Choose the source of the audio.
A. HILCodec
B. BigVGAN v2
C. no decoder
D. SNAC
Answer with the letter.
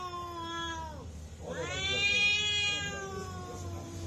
C